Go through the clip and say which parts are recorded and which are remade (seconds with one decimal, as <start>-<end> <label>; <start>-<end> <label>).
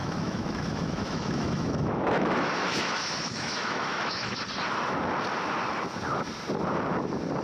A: 0.0-4.4 remade; 4.4-7.4 recorded